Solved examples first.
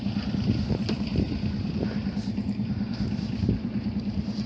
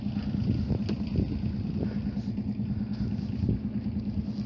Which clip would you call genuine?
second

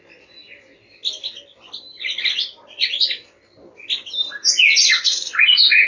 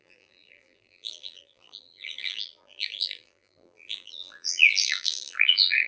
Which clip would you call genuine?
first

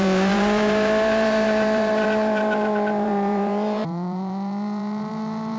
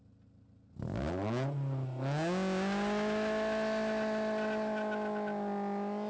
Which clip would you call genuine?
second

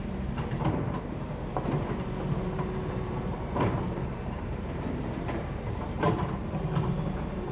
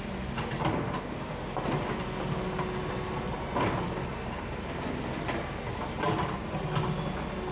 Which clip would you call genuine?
second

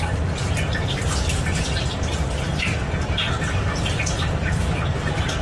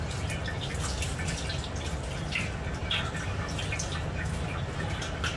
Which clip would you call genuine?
second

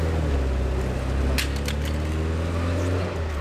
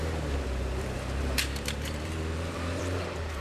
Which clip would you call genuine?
first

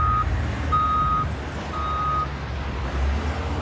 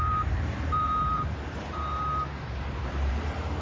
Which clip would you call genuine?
first